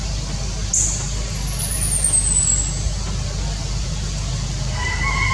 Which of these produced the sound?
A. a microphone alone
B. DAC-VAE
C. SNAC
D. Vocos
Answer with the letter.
A